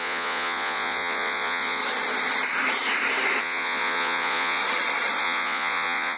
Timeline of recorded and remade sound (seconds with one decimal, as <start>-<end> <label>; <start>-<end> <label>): 0.0-1.8 remade; 1.8-3.4 recorded; 3.4-4.6 remade; 4.6-5.2 recorded; 5.2-6.2 remade